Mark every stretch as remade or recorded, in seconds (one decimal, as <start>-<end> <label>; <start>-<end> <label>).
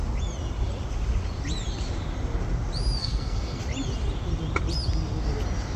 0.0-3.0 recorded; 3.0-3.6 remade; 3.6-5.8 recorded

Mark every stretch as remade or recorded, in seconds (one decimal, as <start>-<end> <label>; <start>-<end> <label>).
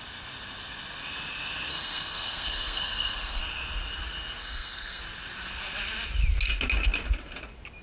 0.0-1.7 recorded; 1.7-3.4 remade; 3.4-4.4 recorded; 4.4-5.0 remade; 5.0-7.8 recorded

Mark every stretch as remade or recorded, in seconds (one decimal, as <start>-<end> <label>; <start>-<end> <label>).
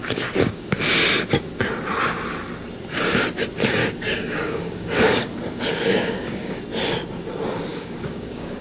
0.0-0.8 remade; 0.8-3.8 recorded; 3.8-6.6 remade; 6.6-7.7 recorded; 7.7-8.6 remade